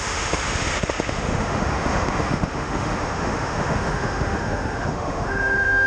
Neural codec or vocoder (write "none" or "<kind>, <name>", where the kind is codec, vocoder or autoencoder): autoencoder, DAC-VAE